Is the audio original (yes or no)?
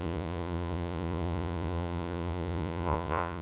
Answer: no